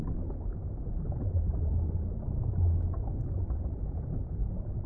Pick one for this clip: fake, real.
real